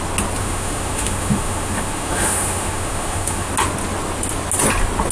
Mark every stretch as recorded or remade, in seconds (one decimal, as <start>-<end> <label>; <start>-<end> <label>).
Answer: 0.0-0.4 recorded; 0.4-3.5 remade; 3.5-5.1 recorded